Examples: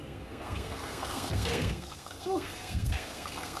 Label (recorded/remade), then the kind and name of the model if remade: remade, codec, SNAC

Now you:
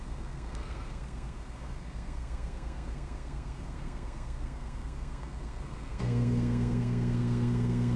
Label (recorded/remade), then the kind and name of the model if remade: remade, codec, SNAC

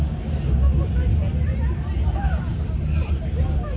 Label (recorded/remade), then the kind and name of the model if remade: recorded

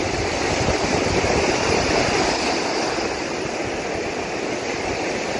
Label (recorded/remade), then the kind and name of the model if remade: recorded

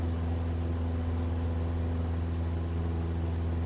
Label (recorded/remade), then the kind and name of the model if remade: recorded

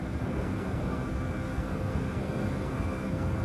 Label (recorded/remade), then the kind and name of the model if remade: remade, codec, SNAC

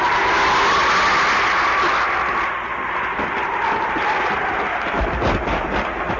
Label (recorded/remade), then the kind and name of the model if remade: recorded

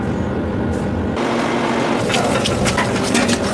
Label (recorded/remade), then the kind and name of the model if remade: recorded